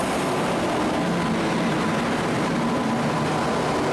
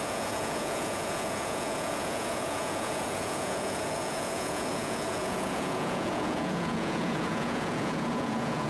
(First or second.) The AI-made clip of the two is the second